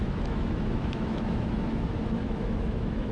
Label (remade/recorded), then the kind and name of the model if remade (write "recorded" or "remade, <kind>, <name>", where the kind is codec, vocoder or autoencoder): remade, autoencoder, DAC-VAE